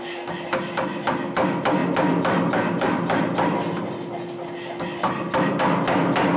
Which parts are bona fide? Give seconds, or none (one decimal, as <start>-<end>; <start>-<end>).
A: 0.0-6.4